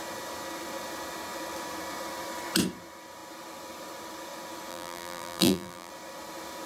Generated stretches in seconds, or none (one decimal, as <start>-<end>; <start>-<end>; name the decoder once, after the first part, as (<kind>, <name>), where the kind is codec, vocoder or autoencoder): 4.7-5.9 (vocoder, BigVGAN v2)